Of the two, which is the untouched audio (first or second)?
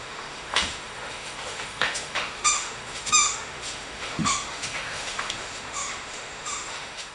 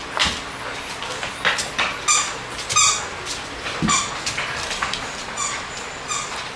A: second